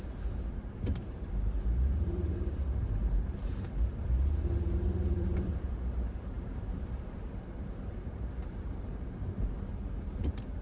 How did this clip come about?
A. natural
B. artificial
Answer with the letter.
B